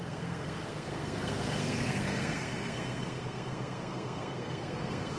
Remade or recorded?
remade